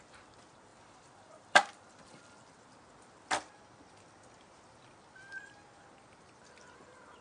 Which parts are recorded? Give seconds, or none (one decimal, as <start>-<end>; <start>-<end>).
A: 0.0-0.7; 2.6-7.2